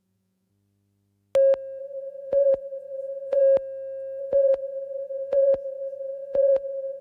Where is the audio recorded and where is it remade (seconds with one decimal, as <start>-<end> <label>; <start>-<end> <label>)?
0.0-0.5 remade; 0.5-1.8 recorded; 1.8-3.4 remade; 3.4-4.2 recorded; 4.2-7.0 remade